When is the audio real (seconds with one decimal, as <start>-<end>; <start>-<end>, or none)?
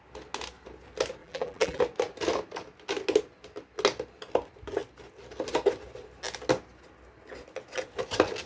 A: 0.0-1.2; 1.8-8.5